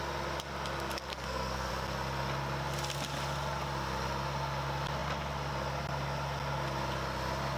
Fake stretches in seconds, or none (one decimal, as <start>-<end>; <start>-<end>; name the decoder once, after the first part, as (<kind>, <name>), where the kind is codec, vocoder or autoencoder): 1.1-1.7 (codec, SNAC)